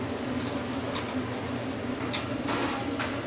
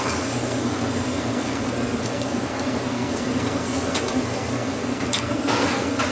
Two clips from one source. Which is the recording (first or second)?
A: first